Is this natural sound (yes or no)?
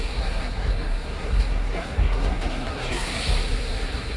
no